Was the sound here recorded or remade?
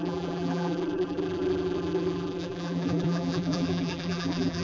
remade